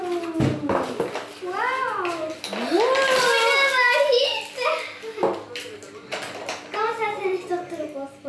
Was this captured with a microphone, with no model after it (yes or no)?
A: yes